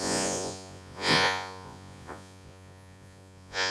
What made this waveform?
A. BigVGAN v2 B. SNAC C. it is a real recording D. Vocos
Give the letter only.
D